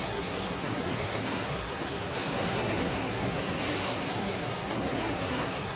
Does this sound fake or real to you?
fake